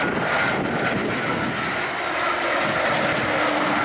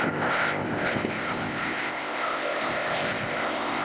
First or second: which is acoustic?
first